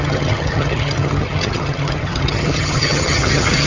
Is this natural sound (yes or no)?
no